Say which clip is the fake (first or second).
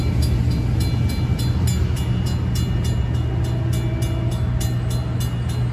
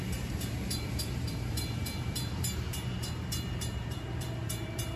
second